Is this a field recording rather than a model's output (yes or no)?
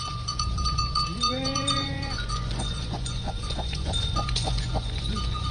no